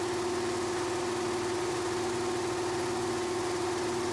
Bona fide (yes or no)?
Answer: yes